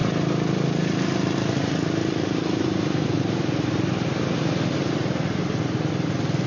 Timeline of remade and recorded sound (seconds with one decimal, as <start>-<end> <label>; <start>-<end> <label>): 0.0-6.5 recorded

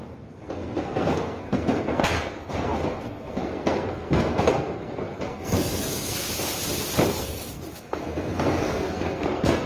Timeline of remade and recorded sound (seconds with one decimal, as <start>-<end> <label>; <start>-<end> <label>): 0.0-6.3 remade; 6.3-7.1 recorded; 7.1-9.7 remade

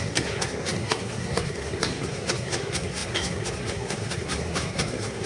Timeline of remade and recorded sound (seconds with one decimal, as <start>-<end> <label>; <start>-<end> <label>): 0.0-5.3 remade